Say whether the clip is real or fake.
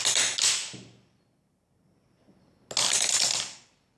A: real